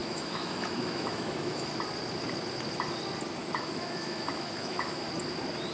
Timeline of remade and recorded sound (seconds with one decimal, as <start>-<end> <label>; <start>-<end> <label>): 0.0-1.7 remade; 1.7-3.4 recorded; 3.4-5.1 remade; 5.1-5.7 recorded